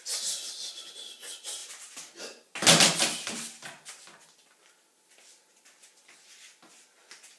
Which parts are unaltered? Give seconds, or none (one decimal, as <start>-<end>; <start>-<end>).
0.0-7.4